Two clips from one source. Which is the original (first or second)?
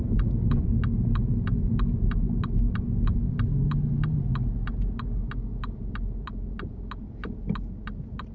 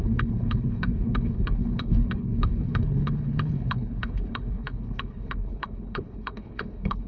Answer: first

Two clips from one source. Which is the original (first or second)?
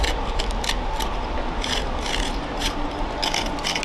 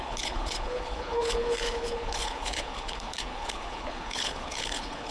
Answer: first